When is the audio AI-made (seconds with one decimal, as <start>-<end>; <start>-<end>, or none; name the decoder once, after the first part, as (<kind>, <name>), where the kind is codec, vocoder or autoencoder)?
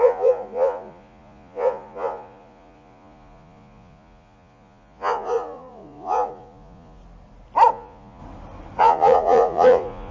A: 0.0-7.0 (vocoder, Vocos); 7.7-8.2; 8.8-10.1